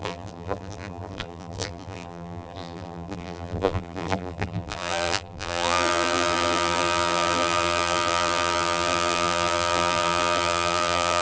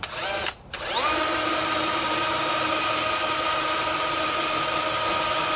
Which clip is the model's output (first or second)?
first